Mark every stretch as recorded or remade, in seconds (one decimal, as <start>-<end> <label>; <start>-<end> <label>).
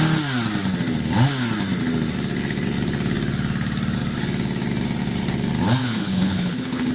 0.0-5.8 recorded; 5.8-6.9 remade